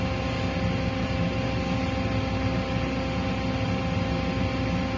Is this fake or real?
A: real